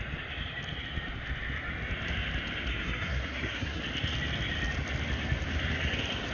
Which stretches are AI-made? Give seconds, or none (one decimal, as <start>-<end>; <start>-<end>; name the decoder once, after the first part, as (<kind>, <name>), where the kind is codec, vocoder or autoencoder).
2.7-3.8 (codec, SNAC)